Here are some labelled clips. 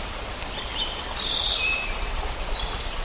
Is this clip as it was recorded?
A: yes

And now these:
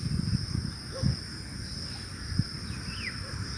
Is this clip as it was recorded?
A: yes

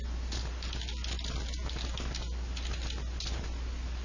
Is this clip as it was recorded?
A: yes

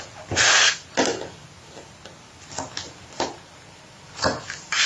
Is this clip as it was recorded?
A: yes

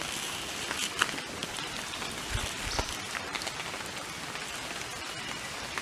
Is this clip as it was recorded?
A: no